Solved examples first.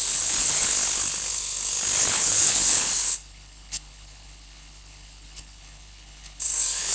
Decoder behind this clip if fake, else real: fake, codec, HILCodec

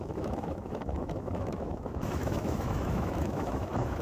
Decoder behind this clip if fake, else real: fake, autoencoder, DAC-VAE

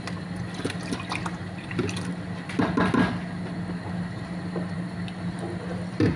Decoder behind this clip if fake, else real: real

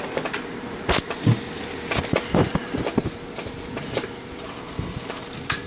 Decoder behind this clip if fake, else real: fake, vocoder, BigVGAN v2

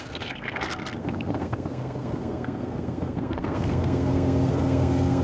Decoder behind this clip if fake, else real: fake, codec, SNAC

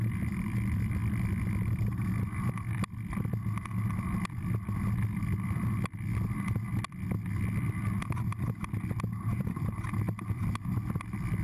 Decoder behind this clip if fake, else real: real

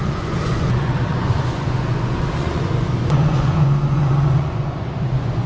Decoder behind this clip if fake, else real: fake, vocoder, Vocos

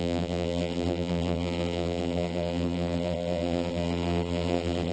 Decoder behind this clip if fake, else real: fake, vocoder, BigVGAN v2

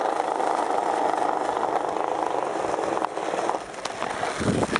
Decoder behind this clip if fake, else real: real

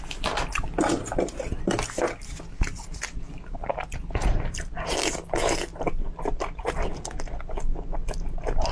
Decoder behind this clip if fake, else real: real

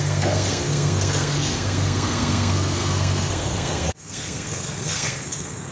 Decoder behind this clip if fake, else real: fake, codec, SNAC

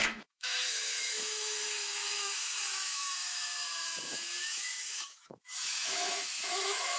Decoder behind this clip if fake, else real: fake, autoencoder, DAC-VAE